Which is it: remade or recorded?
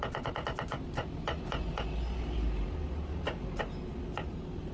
recorded